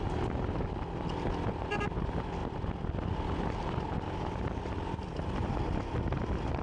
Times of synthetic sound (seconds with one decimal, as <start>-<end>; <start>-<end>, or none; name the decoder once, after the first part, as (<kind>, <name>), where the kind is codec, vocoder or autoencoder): none